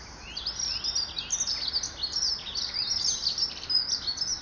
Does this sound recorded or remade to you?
recorded